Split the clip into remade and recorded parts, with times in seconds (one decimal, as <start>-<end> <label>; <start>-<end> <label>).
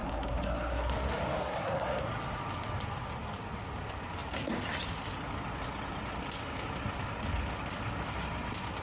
0.0-0.9 remade; 0.9-1.4 recorded; 1.4-2.1 remade; 2.1-8.8 recorded